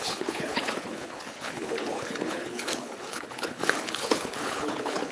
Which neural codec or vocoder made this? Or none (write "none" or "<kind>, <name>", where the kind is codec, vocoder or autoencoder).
codec, HILCodec